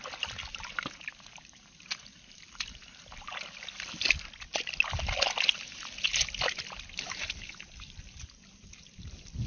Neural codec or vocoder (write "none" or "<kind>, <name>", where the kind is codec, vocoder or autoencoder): none